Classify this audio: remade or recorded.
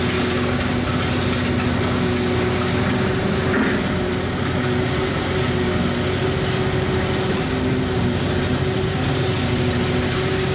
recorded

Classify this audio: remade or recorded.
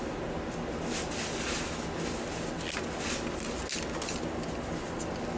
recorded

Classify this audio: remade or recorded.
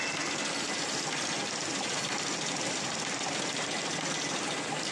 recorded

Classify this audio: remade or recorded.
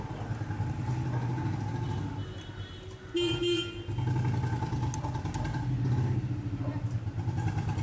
recorded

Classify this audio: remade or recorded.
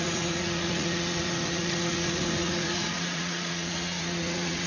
remade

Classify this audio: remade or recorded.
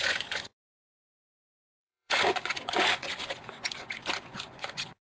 remade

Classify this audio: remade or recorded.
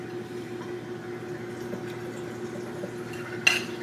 recorded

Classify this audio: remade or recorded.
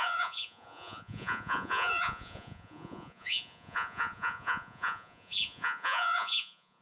remade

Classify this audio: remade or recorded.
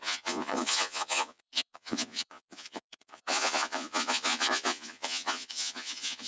remade